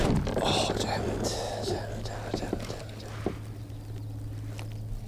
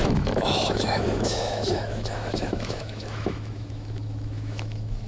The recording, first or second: first